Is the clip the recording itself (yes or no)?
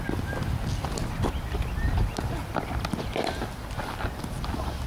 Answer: yes